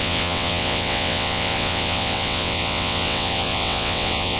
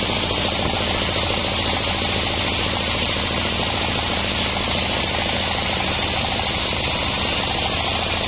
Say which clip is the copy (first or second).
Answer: first